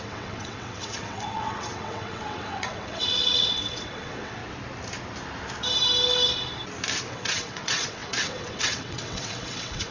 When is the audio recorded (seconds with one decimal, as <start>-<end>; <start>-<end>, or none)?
4.4-7.1